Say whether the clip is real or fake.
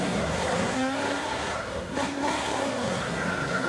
fake